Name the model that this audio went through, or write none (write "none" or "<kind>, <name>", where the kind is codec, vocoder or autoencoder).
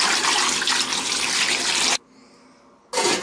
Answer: none